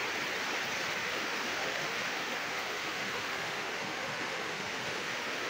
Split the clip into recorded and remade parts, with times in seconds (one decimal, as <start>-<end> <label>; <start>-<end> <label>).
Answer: 0.0-0.9 recorded; 0.9-5.5 remade